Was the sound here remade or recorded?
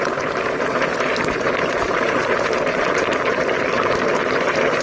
remade